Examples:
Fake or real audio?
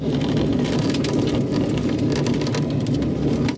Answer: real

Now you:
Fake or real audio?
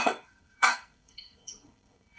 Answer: fake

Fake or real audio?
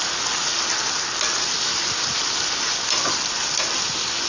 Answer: real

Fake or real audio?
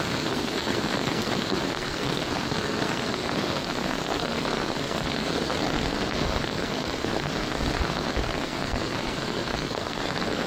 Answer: fake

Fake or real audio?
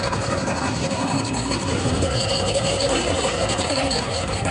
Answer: fake